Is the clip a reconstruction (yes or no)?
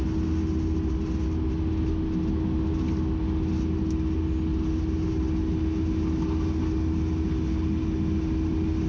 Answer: no